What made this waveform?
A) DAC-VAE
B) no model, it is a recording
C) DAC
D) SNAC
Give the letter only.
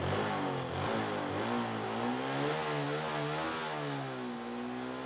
B